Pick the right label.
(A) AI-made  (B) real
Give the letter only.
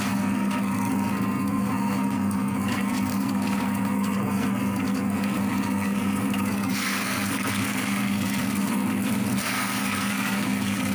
A